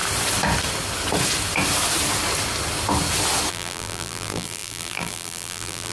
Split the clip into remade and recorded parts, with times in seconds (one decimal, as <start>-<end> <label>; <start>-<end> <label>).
0.0-3.5 recorded; 3.5-5.9 remade

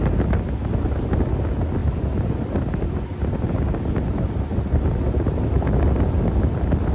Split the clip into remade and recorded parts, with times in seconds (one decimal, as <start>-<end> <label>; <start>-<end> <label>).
0.0-6.9 recorded

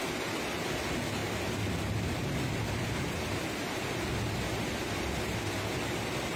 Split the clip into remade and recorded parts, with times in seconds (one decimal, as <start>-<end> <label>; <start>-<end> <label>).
0.0-6.4 recorded

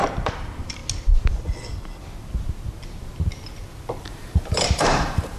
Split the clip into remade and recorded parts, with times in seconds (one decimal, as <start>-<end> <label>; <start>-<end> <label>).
0.0-0.8 remade; 0.8-4.0 recorded; 4.0-5.4 remade

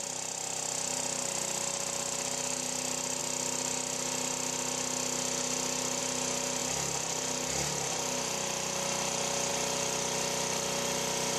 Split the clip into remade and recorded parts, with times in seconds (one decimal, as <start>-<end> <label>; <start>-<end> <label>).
0.0-11.4 recorded

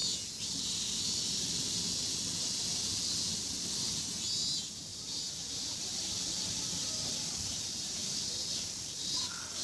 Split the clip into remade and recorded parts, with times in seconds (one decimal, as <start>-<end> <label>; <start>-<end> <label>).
0.0-4.9 recorded; 4.9-9.1 remade; 9.1-9.6 recorded